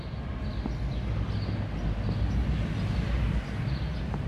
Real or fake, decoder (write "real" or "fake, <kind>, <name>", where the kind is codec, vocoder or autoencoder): real